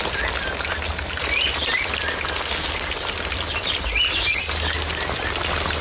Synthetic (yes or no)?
no